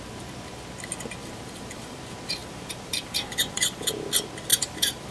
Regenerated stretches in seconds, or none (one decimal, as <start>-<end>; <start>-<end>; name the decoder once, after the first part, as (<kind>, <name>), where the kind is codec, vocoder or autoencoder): 1.2-2.0 (vocoder, BigVGAN v2); 2.4-3.9; 4.5-5.1